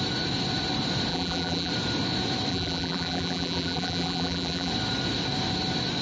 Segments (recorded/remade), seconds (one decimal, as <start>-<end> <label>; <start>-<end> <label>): 0.0-1.1 recorded; 1.1-1.7 remade; 1.7-2.5 recorded; 2.5-4.7 remade; 4.7-6.0 recorded